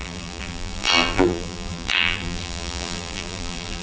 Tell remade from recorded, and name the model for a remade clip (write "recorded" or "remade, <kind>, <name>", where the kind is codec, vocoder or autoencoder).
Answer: remade, vocoder, BigVGAN v2